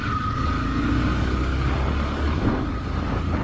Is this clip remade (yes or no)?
yes